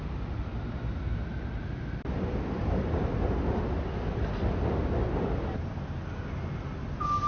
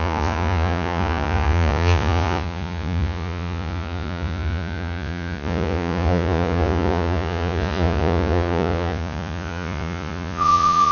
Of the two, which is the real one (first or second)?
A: first